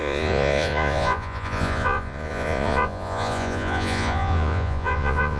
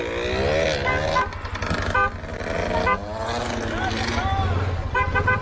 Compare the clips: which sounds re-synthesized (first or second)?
first